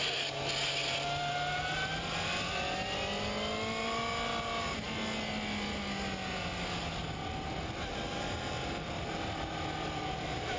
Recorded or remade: recorded